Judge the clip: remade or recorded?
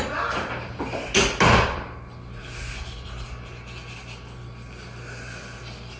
recorded